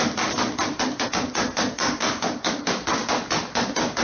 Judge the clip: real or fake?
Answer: real